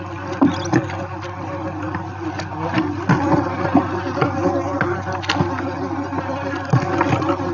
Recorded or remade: recorded